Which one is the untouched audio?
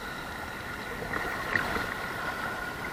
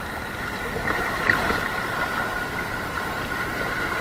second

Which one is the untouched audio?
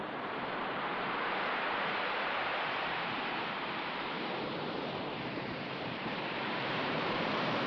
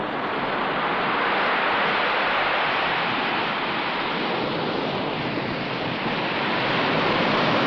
second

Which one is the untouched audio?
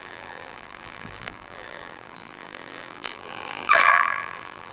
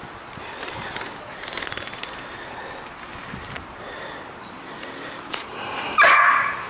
second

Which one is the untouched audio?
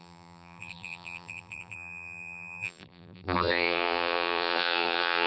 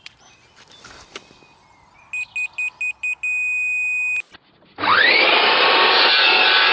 second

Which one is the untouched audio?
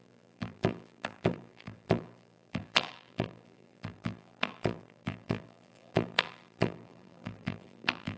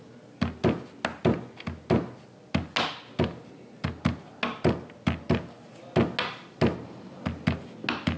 second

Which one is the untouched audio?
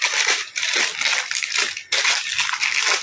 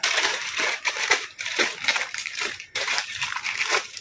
first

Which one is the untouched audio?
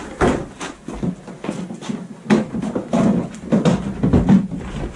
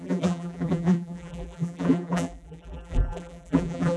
first